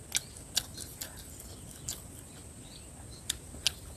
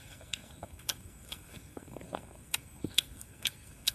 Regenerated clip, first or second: second